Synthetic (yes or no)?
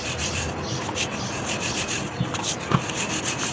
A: no